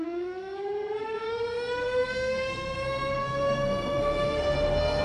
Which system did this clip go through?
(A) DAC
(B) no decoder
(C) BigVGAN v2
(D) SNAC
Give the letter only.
D